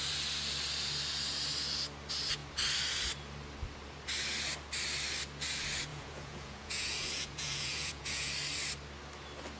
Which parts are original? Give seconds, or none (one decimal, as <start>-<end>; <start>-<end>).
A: 0.0-5.9; 8.3-9.6